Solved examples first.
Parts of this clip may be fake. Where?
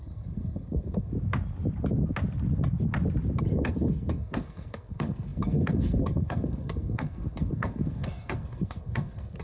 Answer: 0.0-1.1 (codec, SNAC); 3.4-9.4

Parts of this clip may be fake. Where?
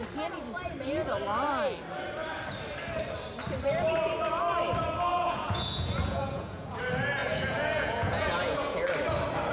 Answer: 5.1-6.8 (vocoder, Vocos); 7.2-8.8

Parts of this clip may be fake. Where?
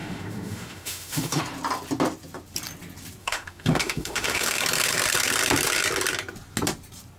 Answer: 0.0-1.4 (autoencoder, DAC-VAE); 3.2-4.6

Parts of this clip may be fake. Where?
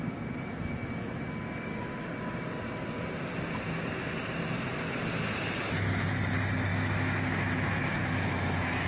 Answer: 6.7-8.9 (autoencoder, DAC-VAE)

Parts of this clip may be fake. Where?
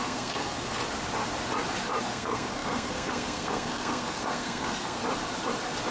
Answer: 0.0-0.8 (codec, SNAC); 2.0-5.0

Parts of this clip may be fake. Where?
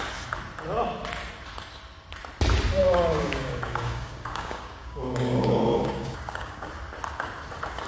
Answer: 2.8-6.7 (codec, DAC)